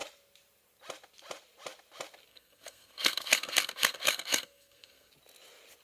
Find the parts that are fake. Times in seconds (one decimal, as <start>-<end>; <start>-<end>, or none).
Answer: 2.3-5.1